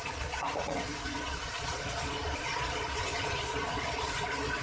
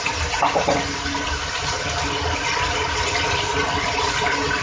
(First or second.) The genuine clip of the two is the second